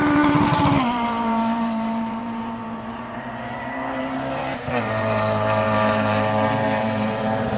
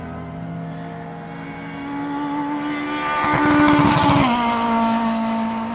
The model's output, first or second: first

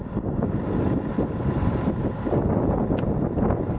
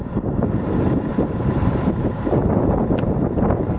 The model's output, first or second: second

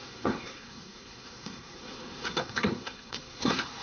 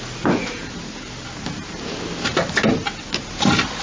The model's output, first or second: first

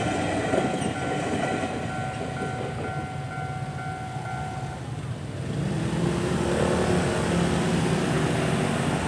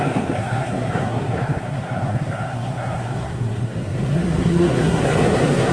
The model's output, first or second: second